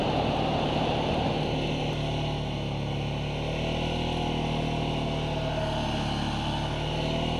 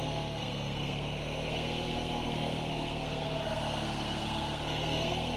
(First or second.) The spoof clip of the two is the second